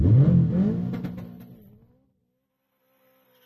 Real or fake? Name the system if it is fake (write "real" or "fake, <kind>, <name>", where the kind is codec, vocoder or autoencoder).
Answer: real